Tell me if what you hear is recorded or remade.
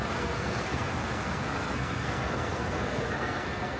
remade